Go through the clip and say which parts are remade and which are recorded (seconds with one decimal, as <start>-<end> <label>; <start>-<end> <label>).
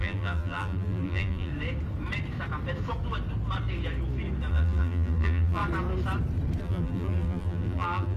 0.0-1.5 remade; 1.5-4.5 recorded; 4.5-5.6 remade; 5.6-6.6 recorded; 6.6-8.2 remade